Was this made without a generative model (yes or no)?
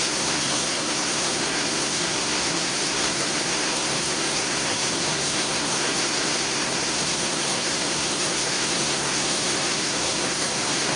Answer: no